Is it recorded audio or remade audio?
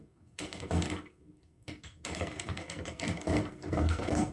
remade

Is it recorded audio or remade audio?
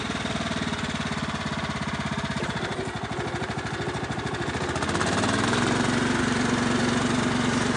recorded